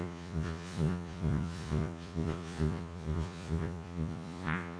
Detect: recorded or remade remade